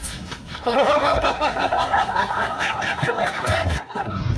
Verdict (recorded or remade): remade